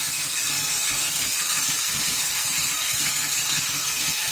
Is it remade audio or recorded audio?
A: remade